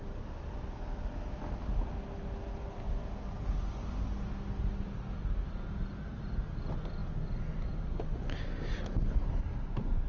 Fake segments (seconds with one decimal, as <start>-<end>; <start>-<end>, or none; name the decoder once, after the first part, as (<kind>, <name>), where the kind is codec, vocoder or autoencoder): none